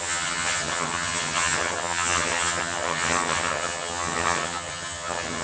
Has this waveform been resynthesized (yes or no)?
yes